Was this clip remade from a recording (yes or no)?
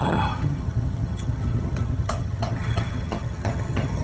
yes